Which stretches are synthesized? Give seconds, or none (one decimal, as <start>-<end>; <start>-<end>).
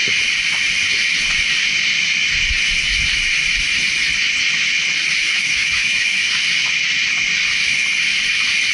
5.2-6.3